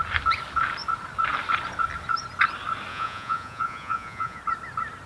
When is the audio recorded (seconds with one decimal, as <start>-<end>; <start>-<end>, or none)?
0.0-2.9; 4.4-5.1